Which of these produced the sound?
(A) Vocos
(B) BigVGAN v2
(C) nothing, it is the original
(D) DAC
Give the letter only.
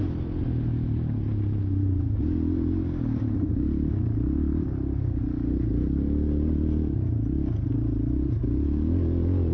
C